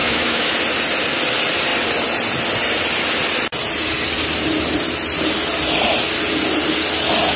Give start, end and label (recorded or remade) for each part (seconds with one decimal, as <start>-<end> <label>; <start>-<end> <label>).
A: 0.0-0.5 remade; 0.5-7.4 recorded